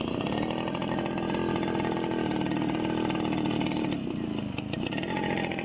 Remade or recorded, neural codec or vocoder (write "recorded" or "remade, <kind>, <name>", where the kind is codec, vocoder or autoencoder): recorded